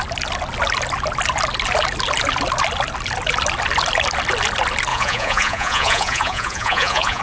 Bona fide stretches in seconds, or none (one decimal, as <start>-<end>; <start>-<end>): 0.0-4.9